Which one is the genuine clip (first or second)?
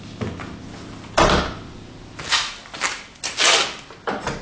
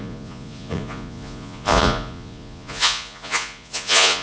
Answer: first